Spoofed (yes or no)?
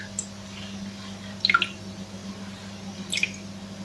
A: no